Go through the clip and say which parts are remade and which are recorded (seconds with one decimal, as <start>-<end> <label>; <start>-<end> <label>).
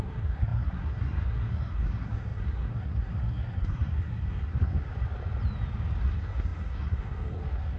0.0-4.9 remade; 4.9-6.0 recorded; 6.0-7.8 remade